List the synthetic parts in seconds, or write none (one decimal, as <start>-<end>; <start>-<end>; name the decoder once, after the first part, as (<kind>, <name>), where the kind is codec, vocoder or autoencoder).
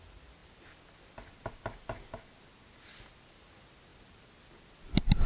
none